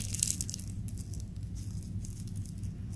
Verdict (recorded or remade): recorded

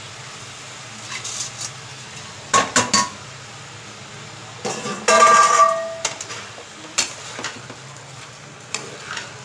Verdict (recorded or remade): recorded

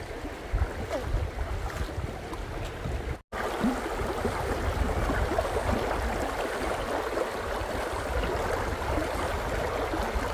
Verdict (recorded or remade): recorded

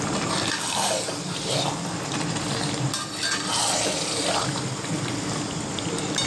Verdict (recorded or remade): recorded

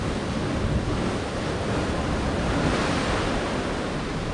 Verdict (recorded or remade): recorded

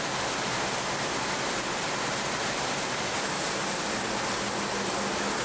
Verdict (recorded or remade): recorded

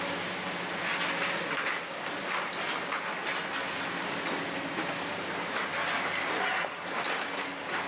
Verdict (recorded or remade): recorded